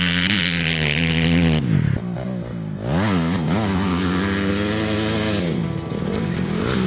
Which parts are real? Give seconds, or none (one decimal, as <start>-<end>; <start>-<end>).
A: 0.0-6.9